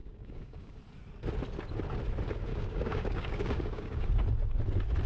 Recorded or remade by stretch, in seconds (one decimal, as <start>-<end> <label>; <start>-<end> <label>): 0.0-0.8 remade; 0.8-2.5 recorded; 2.5-4.1 remade; 4.1-5.1 recorded